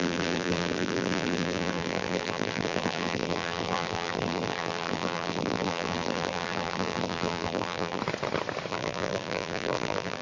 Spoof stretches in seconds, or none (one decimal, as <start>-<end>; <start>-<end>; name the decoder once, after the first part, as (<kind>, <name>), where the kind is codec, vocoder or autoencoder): 0.0-8.0 (vocoder, BigVGAN v2); 8.7-10.2